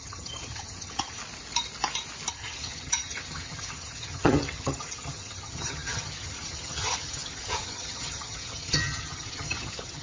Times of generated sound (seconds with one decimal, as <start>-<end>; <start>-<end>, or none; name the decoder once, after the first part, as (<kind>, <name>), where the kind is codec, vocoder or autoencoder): 0.0-1.2 (vocoder, HiFi-GAN); 2.3-10.0